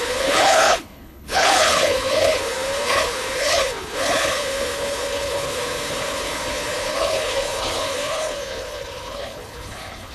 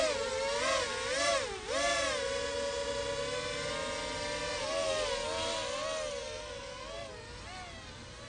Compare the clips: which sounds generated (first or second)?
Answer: first